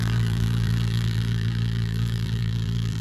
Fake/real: fake